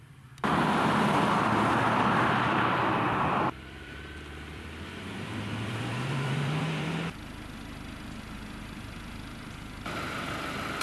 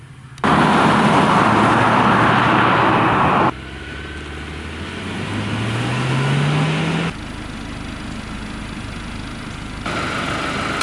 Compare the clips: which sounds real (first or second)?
second